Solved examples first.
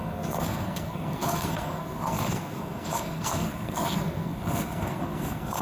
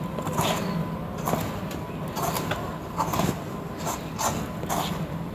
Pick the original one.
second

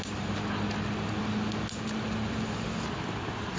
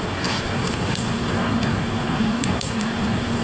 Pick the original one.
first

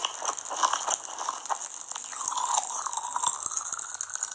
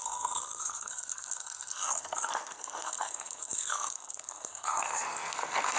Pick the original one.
first